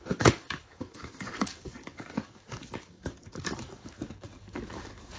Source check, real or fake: fake